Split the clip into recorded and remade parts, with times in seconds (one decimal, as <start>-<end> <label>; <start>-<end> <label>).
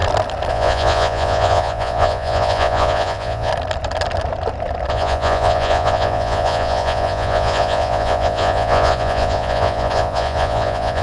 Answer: 0.0-0.5 recorded; 0.5-3.5 remade; 3.5-4.9 recorded; 4.9-11.0 remade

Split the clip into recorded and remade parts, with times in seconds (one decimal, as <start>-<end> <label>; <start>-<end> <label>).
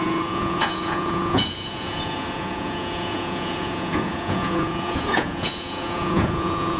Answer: 0.0-6.8 remade